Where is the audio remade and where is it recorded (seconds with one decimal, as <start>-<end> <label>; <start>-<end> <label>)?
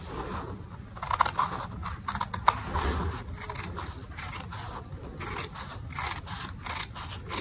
0.0-7.4 recorded